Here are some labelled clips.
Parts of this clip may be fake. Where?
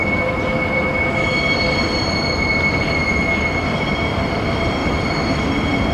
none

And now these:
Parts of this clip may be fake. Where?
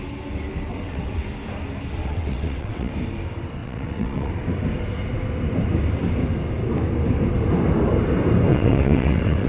0.7-1.2 (vocoder, WaveNeXt); 2.0-2.9; 3.6-4.3; 8.5-9.5